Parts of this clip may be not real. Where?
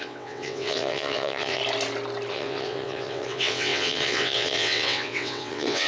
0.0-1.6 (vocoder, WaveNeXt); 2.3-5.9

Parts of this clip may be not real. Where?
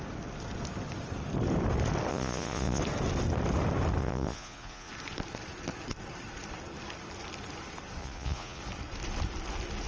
2.1-2.8 (vocoder, Vocos); 4.0-4.9; 8.0-8.6